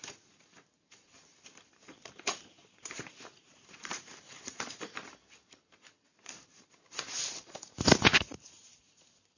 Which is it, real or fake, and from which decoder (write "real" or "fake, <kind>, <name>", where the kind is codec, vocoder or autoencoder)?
fake, vocoder, BigVGAN v2